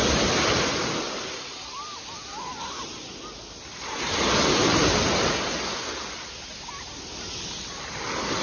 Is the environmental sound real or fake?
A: real